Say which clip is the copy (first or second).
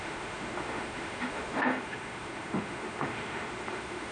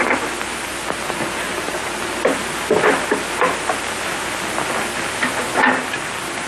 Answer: first